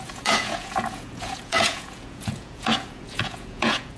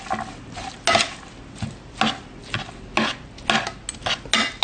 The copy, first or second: first